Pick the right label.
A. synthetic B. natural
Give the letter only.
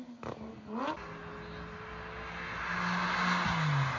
B